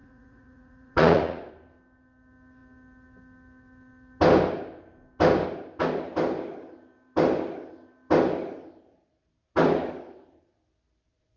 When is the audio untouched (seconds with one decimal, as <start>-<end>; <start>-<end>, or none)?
1.5-11.4